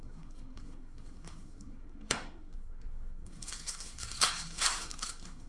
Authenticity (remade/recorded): remade